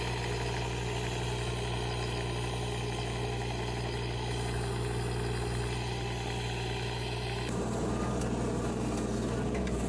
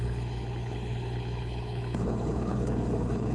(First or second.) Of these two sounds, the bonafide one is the first